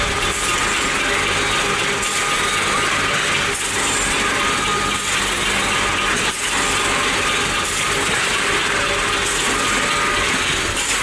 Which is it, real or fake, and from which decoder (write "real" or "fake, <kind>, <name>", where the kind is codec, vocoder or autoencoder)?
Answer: real